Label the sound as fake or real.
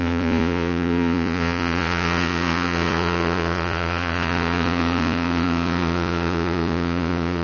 fake